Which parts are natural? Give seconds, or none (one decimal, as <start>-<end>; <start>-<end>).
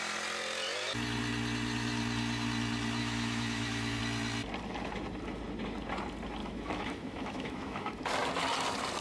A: 0.0-3.0; 4.0-6.4; 7.9-9.0